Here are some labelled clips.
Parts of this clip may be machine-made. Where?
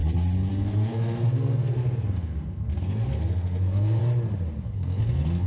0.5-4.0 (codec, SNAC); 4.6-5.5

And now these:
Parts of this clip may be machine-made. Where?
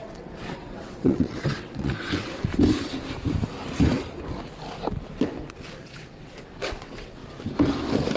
0.0-2.4 (vocoder, WaveNeXt); 5.8-7.2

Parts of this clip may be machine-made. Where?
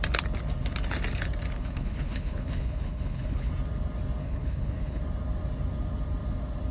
1.6-3.5 (codec, HILCodec); 4.2-5.0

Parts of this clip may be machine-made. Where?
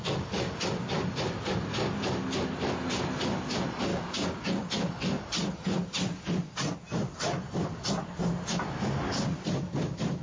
3.9-4.7 (codec, DAC)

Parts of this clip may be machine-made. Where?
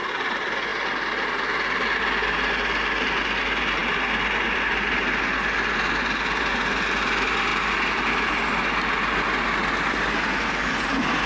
none